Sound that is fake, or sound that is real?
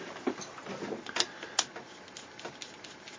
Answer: real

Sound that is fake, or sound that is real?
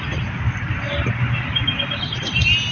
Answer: real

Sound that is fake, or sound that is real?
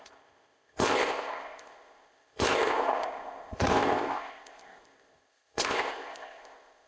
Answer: fake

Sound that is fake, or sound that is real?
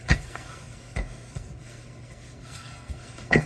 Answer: fake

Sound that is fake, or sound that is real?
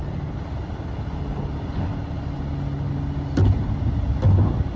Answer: real